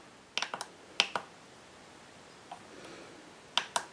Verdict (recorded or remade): recorded